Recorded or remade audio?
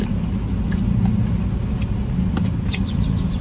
recorded